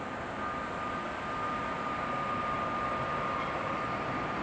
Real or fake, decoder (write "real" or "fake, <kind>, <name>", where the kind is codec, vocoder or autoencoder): real